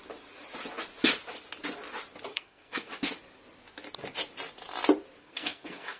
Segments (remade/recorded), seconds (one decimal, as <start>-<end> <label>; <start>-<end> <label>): 0.0-2.3 recorded; 2.3-2.9 remade; 2.9-5.2 recorded; 5.2-6.0 remade